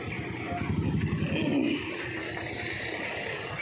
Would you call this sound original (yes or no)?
yes